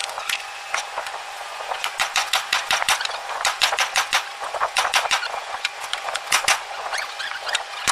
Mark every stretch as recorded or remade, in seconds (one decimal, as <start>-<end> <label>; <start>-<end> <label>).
0.0-7.9 remade